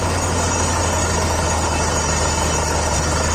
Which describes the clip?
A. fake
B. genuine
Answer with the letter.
B